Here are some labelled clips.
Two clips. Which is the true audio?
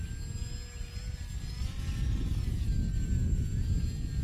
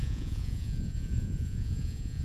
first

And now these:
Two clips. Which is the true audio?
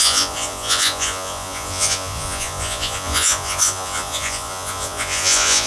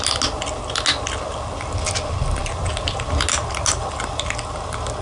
second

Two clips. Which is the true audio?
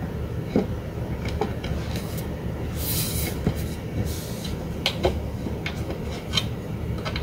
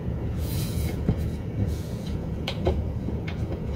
first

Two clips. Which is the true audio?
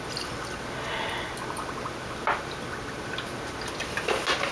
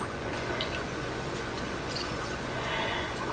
first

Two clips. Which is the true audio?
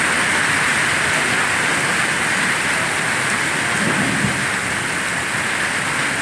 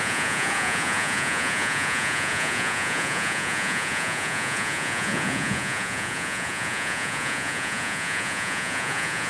first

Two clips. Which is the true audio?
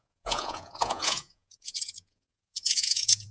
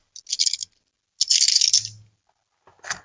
second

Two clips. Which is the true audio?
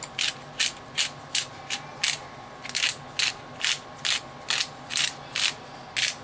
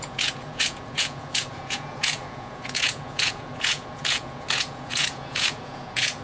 first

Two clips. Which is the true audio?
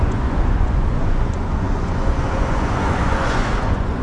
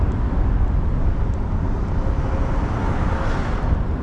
second